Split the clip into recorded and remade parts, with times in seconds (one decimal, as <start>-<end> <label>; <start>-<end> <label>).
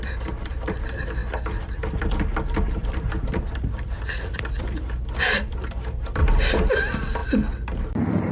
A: 0.0-6.2 remade; 6.2-6.7 recorded; 6.7-7.2 remade; 7.2-7.8 recorded; 7.8-8.3 remade